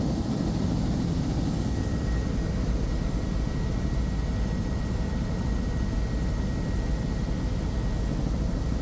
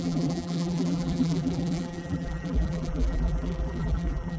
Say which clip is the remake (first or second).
second